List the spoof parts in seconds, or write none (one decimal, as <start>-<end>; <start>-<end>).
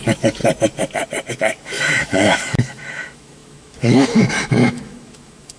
0.0-0.4; 1.3-5.6